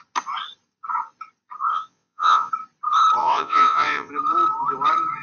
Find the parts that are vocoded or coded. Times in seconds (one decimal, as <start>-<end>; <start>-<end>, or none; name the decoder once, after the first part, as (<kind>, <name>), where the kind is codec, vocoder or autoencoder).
1.7-2.5 (vocoder, WaveNeXt); 3.2-4.1